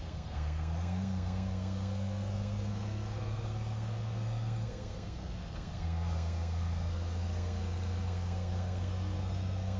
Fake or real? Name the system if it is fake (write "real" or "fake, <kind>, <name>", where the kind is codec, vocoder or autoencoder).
fake, codec, SNAC